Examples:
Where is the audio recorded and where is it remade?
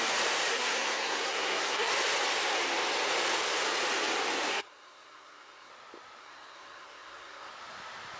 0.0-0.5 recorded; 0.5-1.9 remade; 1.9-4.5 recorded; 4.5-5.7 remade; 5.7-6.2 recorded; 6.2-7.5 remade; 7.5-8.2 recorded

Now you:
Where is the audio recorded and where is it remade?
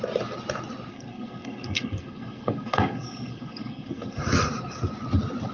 0.0-0.9 recorded; 0.9-4.2 remade; 4.2-5.5 recorded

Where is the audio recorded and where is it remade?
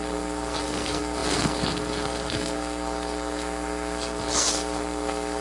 0.0-5.4 remade